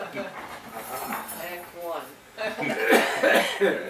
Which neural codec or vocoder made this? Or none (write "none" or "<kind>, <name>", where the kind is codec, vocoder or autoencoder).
none